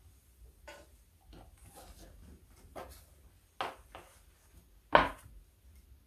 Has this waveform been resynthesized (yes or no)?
no